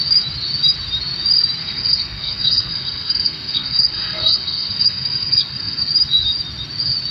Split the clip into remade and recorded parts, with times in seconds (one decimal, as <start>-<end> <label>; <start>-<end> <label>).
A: 0.0-1.6 recorded; 1.6-5.9 remade; 5.9-7.1 recorded